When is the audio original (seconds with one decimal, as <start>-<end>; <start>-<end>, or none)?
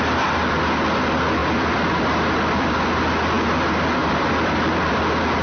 0.0-1.4; 2.7-4.0; 5.0-5.4